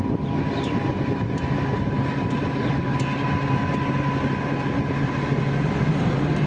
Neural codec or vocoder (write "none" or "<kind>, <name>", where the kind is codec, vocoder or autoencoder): none